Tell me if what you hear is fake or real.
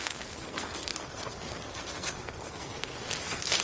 fake